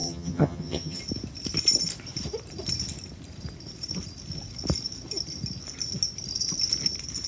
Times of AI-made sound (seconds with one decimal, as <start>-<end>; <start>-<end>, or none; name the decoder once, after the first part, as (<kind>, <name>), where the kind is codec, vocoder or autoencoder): 0.0-1.0 (vocoder, HiFi-GAN)